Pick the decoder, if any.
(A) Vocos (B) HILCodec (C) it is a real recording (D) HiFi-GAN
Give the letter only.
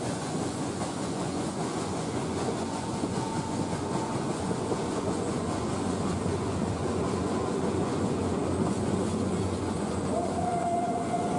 A